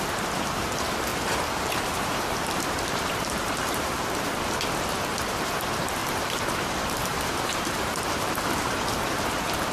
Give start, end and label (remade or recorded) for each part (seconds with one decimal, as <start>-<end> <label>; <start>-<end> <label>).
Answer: 0.0-1.1 recorded; 1.1-4.3 remade; 4.3-6.0 recorded; 6.0-8.3 remade; 8.3-9.7 recorded